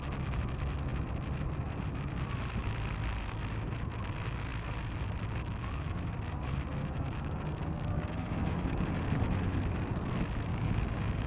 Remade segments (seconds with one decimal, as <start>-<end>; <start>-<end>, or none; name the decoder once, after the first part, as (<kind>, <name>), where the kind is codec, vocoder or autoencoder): 6.8-9.0 (codec, DAC); 10.5-11.3